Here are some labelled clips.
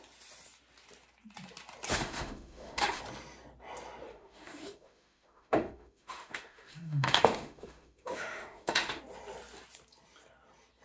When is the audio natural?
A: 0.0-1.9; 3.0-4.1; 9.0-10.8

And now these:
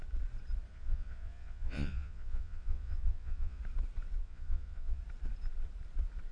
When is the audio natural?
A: 0.0-0.7; 3.6-4.2; 5.0-6.3

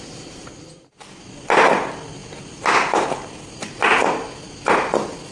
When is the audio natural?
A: 0.0-5.3

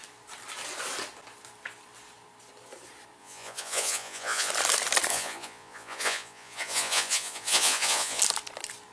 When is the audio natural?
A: 0.0-3.2; 4.5-5.1; 8.2-8.9

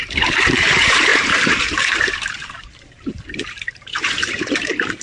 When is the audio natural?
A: none

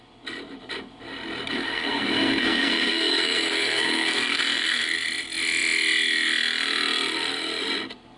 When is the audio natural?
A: 0.0-1.5; 4.8-8.2